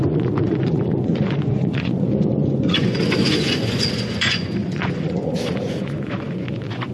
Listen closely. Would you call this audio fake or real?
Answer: fake